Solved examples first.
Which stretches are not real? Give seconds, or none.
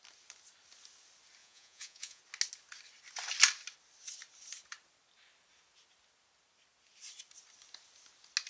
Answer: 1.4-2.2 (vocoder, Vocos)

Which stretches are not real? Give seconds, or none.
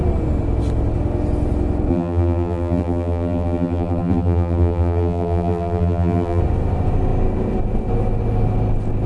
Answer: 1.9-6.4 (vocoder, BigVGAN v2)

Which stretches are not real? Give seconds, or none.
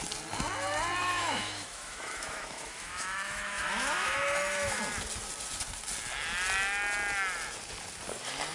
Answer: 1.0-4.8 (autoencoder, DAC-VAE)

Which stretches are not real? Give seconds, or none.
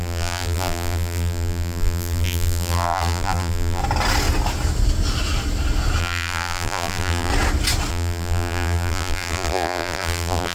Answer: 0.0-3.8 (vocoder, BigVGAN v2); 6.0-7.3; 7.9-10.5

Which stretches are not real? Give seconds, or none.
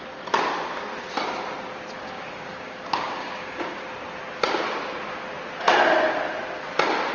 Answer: 2.0-3.8 (codec, DAC)